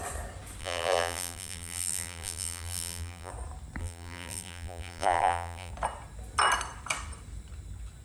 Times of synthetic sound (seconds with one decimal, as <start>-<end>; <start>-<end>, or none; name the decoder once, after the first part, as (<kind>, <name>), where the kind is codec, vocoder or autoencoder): 0.6-3.3 (vocoder, BigVGAN v2); 3.8-5.7

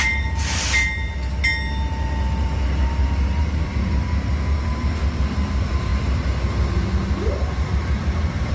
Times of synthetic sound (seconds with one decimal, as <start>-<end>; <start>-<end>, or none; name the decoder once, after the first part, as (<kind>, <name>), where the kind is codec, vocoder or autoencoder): 0.0-1.2 (vocoder, BigVGAN v2); 3.4-5.9; 7.3-8.5

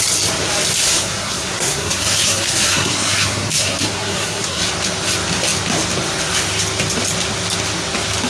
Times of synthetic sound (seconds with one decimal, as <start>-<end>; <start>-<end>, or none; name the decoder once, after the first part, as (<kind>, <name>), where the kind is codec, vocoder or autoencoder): 0.8-4.6 (codec, SNAC)

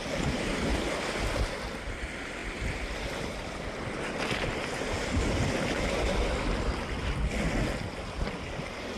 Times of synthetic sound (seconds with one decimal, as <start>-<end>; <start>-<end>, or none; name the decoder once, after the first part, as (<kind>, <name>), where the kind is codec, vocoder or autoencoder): none

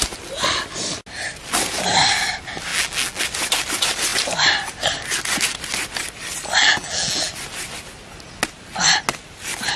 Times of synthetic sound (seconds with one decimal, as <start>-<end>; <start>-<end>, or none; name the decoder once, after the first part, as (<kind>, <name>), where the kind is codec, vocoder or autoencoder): 2.7-3.2 (vocoder, BigVGAN v2); 6.6-7.3

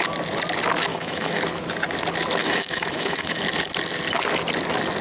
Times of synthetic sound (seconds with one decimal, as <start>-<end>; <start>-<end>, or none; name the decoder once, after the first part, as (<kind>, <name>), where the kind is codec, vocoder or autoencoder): 0.9-1.4 (autoencoder, DAC-VAE); 2.4-3.4

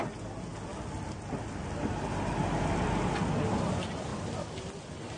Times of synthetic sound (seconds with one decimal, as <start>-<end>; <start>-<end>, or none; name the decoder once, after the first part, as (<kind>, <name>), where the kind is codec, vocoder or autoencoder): none

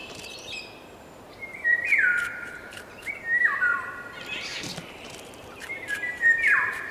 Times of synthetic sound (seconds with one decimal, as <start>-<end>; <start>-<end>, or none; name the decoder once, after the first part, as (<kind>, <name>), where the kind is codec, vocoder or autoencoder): 0.0-0.5 (vocoder, BigVGAN v2); 2.1-3.4; 4.5-6.9